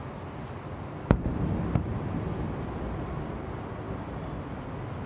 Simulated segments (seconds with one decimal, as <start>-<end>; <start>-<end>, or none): none